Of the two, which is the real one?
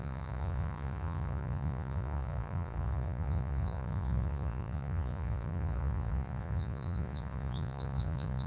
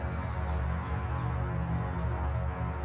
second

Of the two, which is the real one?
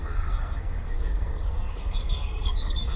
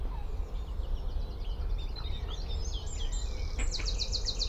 second